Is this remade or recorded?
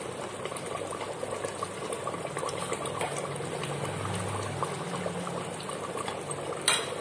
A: recorded